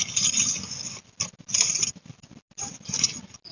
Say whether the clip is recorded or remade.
recorded